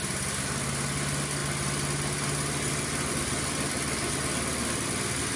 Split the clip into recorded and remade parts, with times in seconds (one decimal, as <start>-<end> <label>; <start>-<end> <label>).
0.0-5.4 recorded